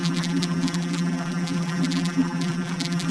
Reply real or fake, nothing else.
fake